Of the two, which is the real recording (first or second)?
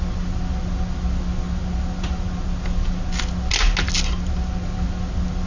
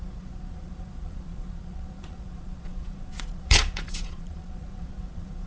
first